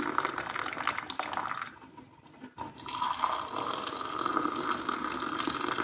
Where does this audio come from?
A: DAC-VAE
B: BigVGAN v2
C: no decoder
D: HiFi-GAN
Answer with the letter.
C